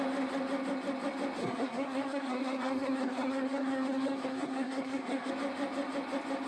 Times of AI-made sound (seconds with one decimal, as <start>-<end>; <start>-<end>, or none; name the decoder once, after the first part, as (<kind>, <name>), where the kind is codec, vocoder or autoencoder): 1.4-5.3 (codec, SNAC)